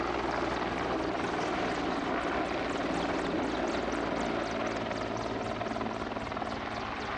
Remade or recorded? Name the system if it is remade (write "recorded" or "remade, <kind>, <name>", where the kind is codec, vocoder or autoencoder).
recorded